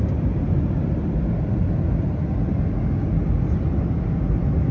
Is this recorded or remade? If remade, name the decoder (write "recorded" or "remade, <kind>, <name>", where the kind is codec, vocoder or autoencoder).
recorded